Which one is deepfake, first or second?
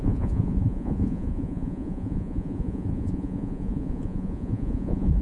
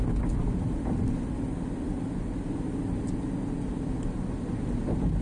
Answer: first